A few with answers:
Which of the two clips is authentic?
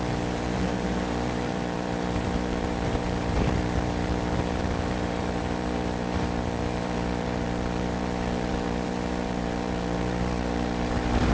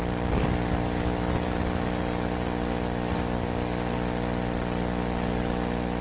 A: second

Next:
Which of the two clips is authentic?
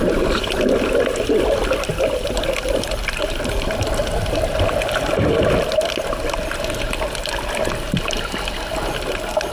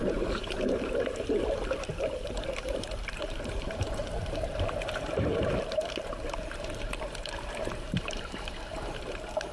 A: first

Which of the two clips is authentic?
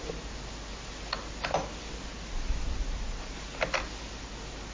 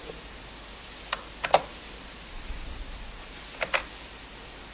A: first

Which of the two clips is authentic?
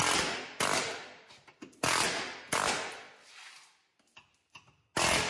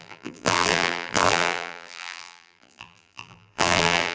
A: first